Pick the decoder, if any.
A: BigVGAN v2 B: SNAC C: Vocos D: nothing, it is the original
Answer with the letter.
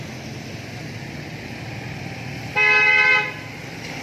D